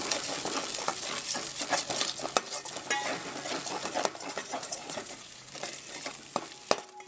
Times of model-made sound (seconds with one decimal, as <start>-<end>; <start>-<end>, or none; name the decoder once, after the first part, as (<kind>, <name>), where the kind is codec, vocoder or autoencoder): 4.4-5.5 (vocoder, Vocos)